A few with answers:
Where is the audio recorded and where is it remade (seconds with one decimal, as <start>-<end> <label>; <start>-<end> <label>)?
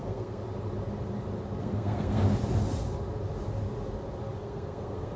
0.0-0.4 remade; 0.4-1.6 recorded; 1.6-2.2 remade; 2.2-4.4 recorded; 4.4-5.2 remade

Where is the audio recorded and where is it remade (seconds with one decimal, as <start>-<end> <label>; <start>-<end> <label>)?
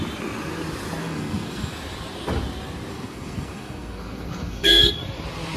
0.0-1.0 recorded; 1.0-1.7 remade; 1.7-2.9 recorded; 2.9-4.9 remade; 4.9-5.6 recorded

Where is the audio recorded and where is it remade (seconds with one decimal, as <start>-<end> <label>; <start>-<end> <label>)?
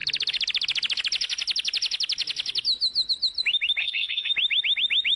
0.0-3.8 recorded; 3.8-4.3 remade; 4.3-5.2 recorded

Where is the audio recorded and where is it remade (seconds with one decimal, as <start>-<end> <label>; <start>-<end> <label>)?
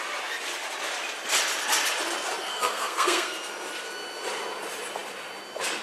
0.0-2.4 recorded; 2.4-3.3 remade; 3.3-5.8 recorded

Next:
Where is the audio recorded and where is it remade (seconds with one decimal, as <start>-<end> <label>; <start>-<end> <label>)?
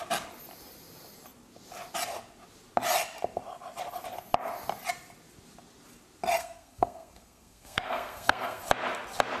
0.0-6.4 recorded; 6.4-8.6 remade; 8.6-9.4 recorded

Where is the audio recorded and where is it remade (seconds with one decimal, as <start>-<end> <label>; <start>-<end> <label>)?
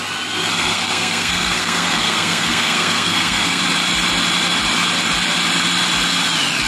0.0-0.5 recorded; 0.5-3.6 remade; 3.6-6.7 recorded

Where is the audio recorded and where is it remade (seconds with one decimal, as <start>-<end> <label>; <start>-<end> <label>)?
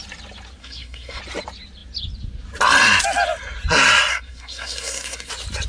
0.0-0.6 recorded; 0.6-1.2 remade; 1.2-4.1 recorded; 4.1-5.3 remade; 5.3-5.7 recorded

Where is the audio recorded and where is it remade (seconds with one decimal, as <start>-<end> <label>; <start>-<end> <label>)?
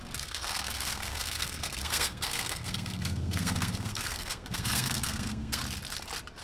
0.0-5.6 remade; 5.6-6.4 recorded